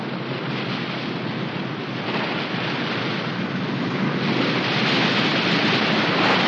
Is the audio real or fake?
real